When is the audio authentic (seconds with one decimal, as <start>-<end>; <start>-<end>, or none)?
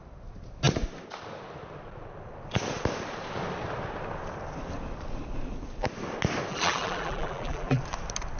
0.0-6.5; 7.8-8.4